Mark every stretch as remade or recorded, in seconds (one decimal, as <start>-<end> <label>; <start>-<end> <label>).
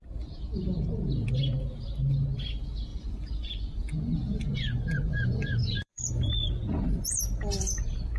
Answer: 0.0-2.9 recorded; 2.9-7.2 remade; 7.2-8.2 recorded